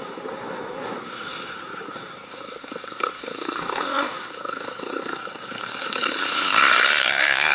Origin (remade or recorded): remade